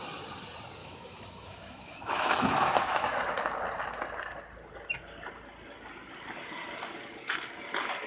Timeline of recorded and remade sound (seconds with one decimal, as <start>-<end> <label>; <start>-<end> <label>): 0.0-0.8 recorded; 0.8-3.2 remade; 3.2-8.1 recorded